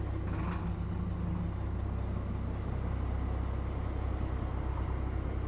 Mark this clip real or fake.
real